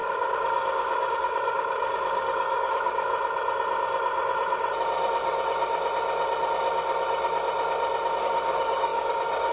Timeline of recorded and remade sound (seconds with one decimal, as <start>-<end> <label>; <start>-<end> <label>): 0.0-3.1 remade; 3.1-8.2 recorded; 8.2-9.5 remade